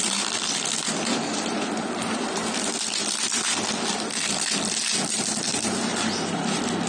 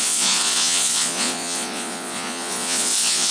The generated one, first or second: second